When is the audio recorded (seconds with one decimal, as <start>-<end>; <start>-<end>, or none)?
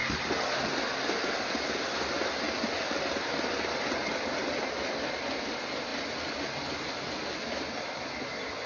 0.0-8.7